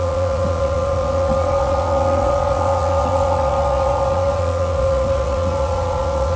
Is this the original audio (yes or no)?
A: no